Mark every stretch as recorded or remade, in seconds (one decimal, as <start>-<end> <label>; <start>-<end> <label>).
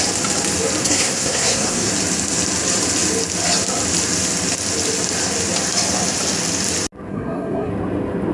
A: 0.0-0.8 recorded; 0.8-1.9 remade; 1.9-7.1 recorded; 7.1-7.7 remade; 7.7-8.3 recorded